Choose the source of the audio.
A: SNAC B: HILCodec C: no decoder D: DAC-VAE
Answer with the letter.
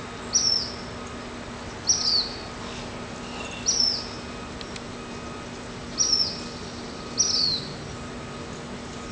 C